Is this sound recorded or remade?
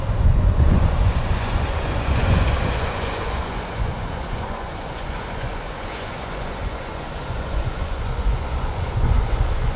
remade